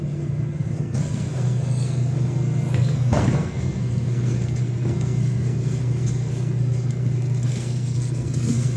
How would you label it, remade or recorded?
remade